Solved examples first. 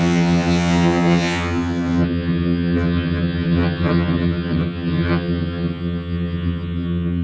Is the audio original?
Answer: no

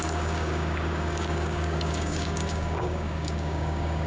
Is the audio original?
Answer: no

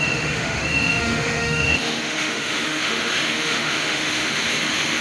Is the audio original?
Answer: no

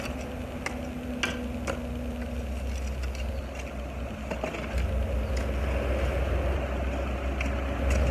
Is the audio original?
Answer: yes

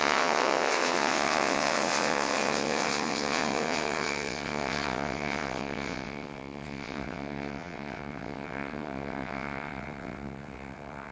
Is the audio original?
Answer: no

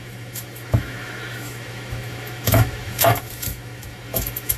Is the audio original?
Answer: no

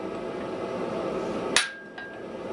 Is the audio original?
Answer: yes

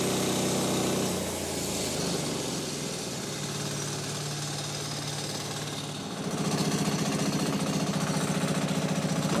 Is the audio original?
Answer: yes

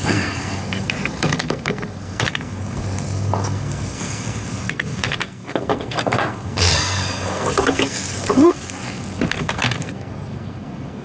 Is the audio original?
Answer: no